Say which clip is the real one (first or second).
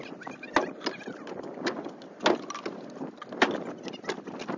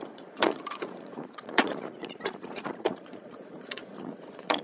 first